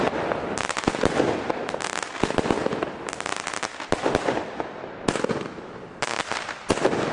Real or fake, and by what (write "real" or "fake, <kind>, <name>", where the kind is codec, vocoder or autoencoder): real